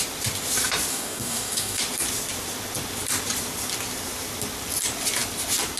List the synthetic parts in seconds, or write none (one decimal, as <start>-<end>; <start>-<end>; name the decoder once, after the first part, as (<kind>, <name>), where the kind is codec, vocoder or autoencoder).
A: 0.9-1.8 (codec, DAC)